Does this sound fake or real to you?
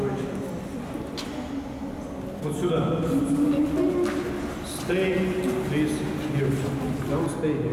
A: real